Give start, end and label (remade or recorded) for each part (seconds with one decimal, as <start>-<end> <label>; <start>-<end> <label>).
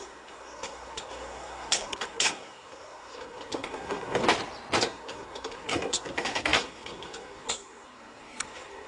0.0-4.2 remade; 4.2-4.8 recorded; 4.8-8.9 remade